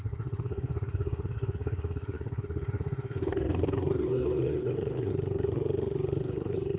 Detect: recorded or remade remade